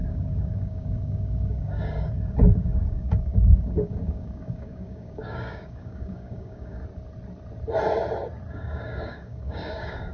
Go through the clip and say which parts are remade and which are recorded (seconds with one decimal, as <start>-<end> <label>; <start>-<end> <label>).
0.0-6.8 remade; 6.8-8.5 recorded; 8.5-10.1 remade